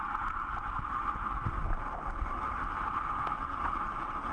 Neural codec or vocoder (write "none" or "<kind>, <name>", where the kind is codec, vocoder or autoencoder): none